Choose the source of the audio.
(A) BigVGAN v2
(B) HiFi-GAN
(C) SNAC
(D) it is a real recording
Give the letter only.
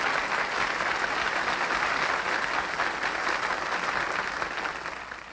D